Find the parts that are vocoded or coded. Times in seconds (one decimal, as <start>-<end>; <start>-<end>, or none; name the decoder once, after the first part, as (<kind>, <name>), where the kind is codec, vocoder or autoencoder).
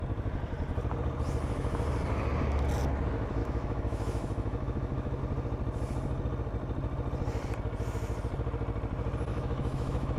3.4-5.2 (autoencoder, DAC-VAE); 9.3-10.2